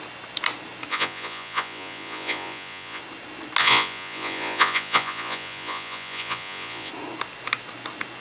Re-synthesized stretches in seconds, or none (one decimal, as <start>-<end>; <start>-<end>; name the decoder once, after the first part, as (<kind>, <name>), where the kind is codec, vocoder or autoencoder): 0.9-3.0 (vocoder, Vocos); 3.6-6.9